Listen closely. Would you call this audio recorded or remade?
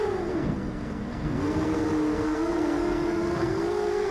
remade